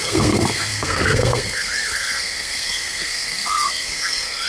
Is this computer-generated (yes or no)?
yes